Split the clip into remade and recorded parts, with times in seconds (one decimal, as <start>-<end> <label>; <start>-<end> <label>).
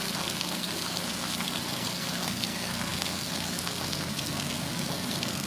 0.0-5.5 remade